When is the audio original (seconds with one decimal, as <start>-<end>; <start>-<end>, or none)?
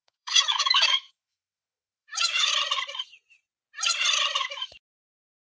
2.5-4.4